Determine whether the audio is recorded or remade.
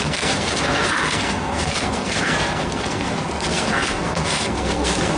remade